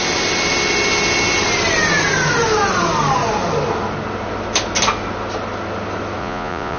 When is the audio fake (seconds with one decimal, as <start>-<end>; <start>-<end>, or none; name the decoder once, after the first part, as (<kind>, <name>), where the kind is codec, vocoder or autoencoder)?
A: 6.2-6.8 (vocoder, Vocos)